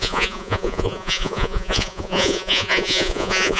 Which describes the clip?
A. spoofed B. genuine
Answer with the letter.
A